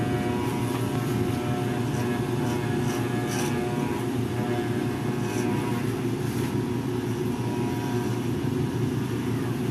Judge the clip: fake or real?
real